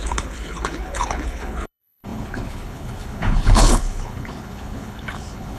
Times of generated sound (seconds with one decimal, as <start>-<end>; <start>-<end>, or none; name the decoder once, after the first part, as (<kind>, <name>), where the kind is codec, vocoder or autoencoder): 0.0-5.6 (codec, HILCodec)